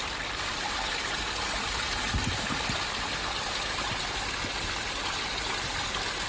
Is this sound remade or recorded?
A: recorded